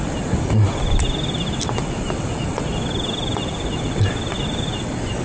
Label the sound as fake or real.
real